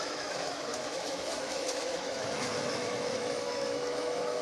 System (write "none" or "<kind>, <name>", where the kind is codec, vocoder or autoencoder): autoencoder, DAC-VAE